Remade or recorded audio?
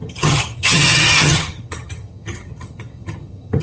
remade